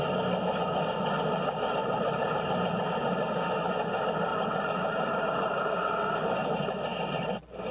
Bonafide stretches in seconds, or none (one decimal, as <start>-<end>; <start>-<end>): 0.0-1.8; 2.8-4.3; 6.5-7.7